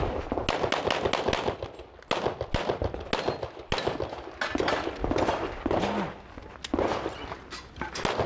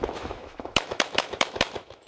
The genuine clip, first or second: first